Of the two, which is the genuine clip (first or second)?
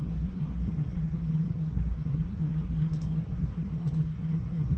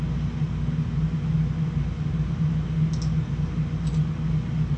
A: second